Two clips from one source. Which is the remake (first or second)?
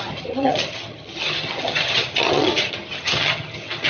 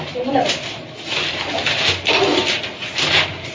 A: first